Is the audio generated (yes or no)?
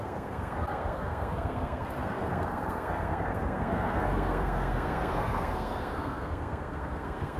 yes